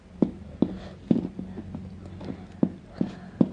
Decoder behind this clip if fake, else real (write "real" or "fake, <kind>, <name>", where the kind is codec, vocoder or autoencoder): real